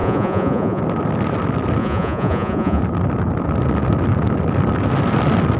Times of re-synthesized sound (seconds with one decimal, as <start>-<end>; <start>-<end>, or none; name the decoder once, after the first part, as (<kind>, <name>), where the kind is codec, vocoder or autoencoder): 0.0-0.8 (vocoder, Vocos); 1.8-2.8